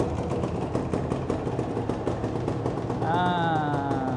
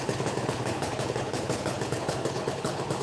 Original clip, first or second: first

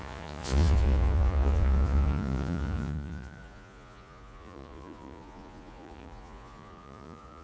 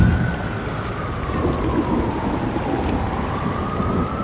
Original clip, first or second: second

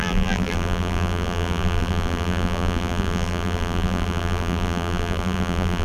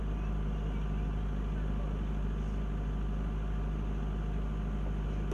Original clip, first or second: second